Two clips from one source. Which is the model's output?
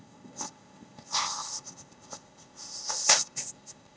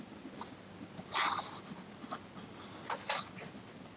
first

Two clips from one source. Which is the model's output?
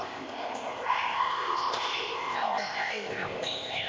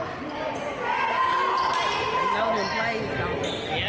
first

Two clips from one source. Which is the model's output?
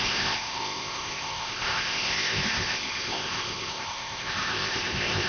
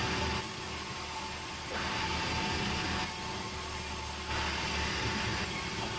first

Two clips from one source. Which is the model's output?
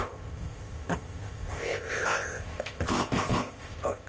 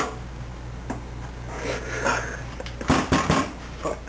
first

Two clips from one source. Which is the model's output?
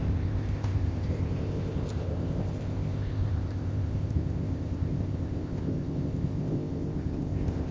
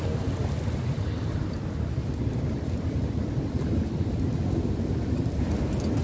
first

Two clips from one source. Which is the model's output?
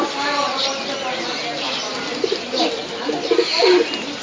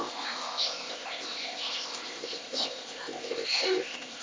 second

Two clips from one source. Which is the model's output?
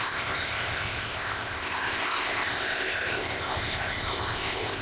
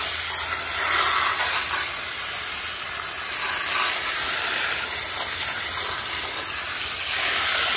first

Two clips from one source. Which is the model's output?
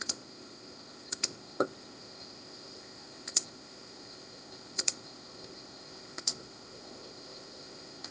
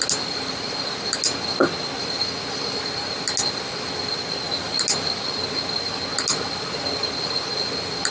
first